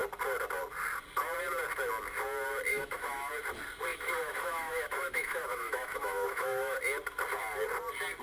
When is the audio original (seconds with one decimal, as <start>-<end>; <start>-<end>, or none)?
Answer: 0.0-2.7; 3.3-3.9; 6.8-8.2